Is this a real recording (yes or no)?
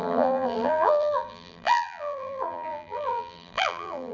no